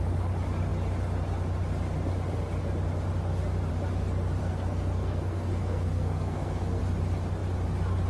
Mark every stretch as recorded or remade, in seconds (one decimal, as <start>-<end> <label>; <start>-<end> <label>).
0.0-4.4 recorded; 4.4-6.8 remade; 6.8-8.1 recorded